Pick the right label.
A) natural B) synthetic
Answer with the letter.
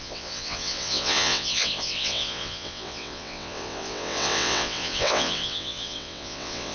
B